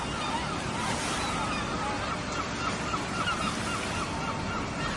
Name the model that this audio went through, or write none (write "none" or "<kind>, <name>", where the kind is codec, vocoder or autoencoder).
none